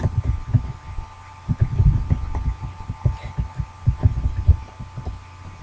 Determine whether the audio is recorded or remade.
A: recorded